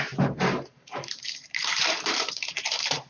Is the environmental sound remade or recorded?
remade